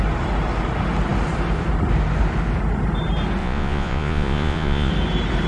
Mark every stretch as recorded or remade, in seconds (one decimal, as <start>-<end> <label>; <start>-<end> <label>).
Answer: 0.0-3.4 recorded; 3.4-4.9 remade; 4.9-5.5 recorded